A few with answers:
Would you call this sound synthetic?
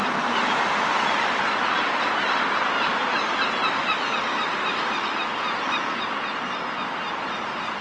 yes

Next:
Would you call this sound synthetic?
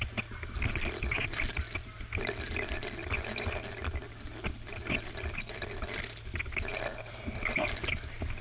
no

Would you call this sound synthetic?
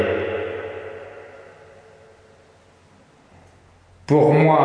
no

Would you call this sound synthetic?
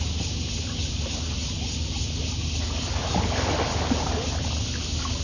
no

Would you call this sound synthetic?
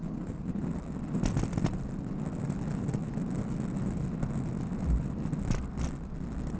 no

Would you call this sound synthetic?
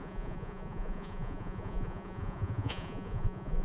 yes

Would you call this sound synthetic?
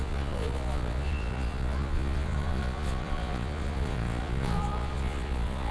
yes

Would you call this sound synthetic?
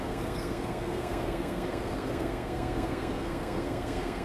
yes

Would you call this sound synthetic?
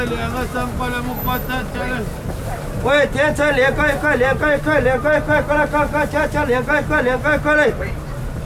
no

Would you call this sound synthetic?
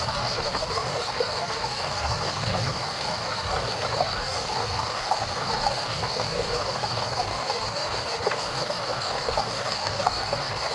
yes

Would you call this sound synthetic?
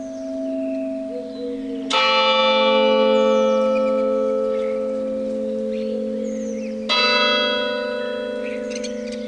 no